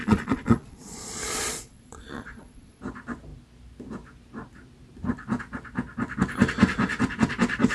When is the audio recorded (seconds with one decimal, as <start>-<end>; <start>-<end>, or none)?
2.8-7.7